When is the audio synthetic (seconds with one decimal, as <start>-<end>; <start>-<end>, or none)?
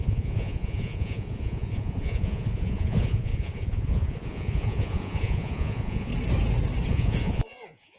0.0-6.1; 6.9-8.0